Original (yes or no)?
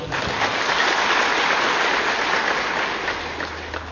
yes